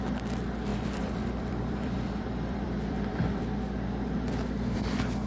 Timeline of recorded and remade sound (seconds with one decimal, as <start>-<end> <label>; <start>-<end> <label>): 0.0-0.7 recorded; 0.7-3.4 remade; 3.4-5.3 recorded